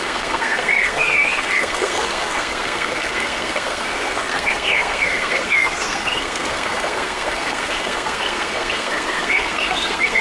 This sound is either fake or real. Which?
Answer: fake